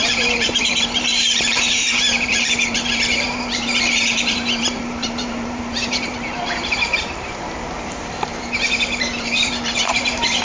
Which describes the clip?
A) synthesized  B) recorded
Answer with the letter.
A